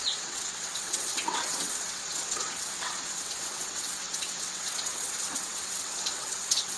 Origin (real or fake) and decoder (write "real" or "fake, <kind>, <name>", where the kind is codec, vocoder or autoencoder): fake, vocoder, WaveNeXt